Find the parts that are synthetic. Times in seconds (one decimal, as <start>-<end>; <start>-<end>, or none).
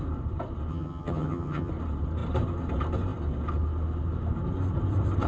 0.7-1.7